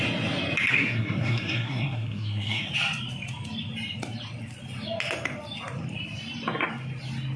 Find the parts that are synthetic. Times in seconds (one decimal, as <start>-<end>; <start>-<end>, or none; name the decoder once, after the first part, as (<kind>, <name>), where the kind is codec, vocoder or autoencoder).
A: 0.7-2.7 (codec, SNAC)

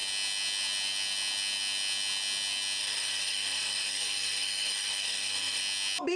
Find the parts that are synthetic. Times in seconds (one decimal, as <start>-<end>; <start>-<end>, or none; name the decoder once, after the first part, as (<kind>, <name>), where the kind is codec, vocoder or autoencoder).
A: 2.8-5.6 (codec, SNAC)

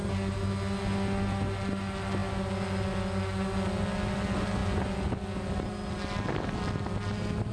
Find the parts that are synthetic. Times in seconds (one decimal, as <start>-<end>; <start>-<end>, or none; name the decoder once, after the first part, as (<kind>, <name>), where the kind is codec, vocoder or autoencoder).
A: none